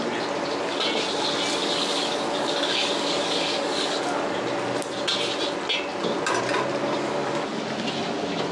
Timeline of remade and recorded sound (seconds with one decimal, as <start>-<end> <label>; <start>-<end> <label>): 0.0-1.6 recorded; 1.6-4.4 remade; 4.4-6.8 recorded; 6.8-7.6 remade; 7.6-8.5 recorded